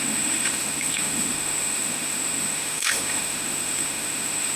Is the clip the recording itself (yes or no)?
no